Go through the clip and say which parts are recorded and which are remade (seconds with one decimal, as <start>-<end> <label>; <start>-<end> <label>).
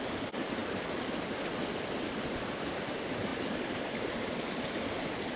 0.0-5.4 recorded